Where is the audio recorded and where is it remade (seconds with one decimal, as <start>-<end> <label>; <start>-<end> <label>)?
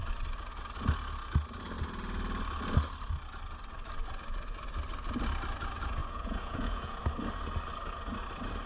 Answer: 0.0-6.0 recorded; 6.0-7.0 remade; 7.0-8.7 recorded